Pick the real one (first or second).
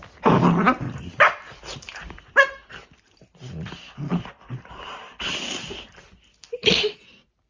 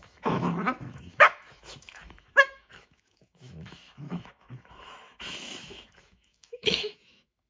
first